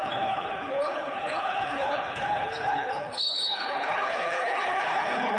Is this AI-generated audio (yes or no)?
yes